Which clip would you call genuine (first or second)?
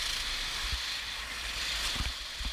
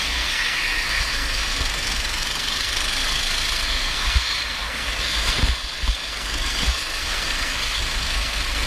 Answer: first